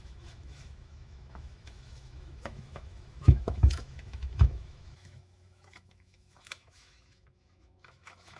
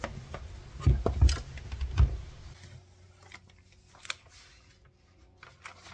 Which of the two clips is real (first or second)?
second